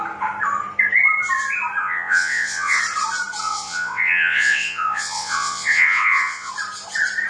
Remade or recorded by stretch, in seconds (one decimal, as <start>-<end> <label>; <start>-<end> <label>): 0.0-1.8 recorded; 1.8-2.8 remade; 2.8-3.4 recorded; 3.4-6.5 remade; 6.5-7.3 recorded